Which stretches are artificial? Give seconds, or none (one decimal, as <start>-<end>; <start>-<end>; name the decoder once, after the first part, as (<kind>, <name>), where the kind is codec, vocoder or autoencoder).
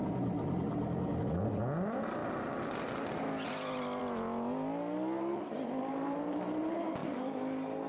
none